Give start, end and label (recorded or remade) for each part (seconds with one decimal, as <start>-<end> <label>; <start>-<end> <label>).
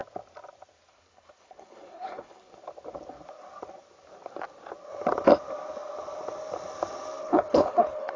0.0-0.9 recorded; 0.9-2.6 remade; 2.6-7.2 recorded; 7.2-8.2 remade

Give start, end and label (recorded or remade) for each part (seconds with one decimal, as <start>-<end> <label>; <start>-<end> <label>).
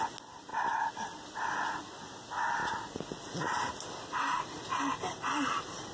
0.0-5.9 recorded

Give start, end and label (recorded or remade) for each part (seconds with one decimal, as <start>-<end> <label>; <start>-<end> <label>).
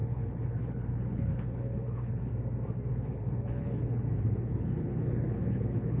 0.0-2.3 remade; 2.3-2.9 recorded; 2.9-6.0 remade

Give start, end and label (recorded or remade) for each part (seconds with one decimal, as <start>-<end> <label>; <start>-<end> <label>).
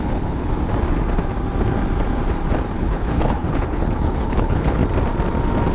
0.0-0.5 remade; 0.5-2.7 recorded; 2.7-4.8 remade; 4.8-5.7 recorded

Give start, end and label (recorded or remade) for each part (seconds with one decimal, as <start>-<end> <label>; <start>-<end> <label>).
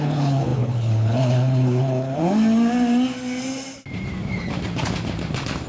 0.0-2.2 remade; 2.2-5.7 recorded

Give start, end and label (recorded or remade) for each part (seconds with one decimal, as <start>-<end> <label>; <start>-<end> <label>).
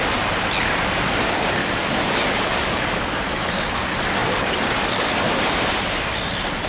0.0-6.7 recorded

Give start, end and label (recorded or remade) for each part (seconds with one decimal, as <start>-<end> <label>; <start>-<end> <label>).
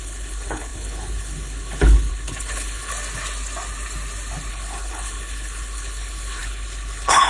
0.0-2.9 remade; 2.9-4.5 recorded; 4.5-7.3 remade